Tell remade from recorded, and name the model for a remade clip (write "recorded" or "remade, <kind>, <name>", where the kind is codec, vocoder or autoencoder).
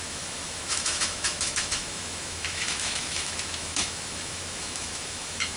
remade, autoencoder, DAC-VAE